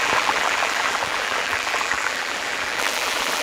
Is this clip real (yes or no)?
no